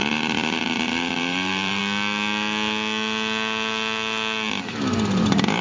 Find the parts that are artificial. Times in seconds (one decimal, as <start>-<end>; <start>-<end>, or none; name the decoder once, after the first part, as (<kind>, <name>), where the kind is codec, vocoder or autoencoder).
0.0-1.8 (vocoder, BigVGAN v2)

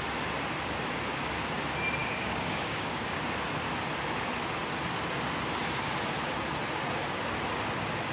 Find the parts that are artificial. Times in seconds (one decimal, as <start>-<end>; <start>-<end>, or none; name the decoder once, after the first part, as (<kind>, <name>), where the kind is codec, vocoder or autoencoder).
2.0-3.2 (codec, DAC)

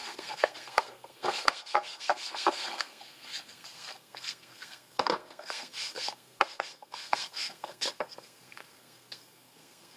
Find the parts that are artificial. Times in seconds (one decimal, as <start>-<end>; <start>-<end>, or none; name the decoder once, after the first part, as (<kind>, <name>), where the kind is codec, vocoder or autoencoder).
0.0-10.0 (codec, SNAC)

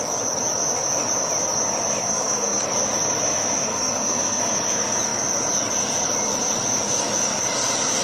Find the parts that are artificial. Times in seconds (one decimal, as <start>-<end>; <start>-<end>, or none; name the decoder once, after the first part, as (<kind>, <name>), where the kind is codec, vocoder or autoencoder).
2.0-2.6 (codec, SNAC); 3.6-4.4